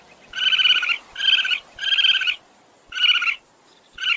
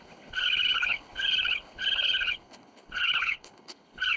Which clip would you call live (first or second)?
first